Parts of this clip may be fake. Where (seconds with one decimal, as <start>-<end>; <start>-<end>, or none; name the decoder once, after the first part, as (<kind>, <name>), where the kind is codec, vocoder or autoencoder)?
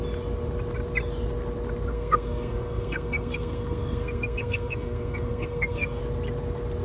1.9-6.0 (codec, SNAC)